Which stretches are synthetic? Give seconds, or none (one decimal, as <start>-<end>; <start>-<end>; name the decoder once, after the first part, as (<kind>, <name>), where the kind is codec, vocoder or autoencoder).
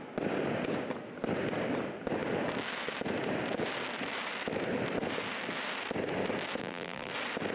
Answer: 6.6-7.1 (vocoder, BigVGAN v2)